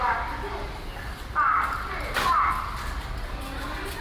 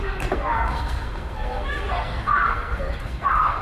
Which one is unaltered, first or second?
first